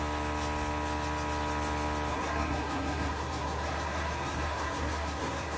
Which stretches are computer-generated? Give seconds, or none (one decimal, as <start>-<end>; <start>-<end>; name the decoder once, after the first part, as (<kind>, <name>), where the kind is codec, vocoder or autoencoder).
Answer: 2.1-5.6 (codec, SNAC)